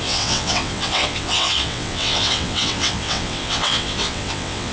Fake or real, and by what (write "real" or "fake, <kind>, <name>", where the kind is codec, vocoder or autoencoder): fake, vocoder, WaveNeXt